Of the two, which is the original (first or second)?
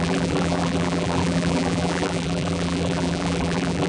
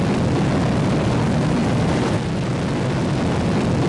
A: second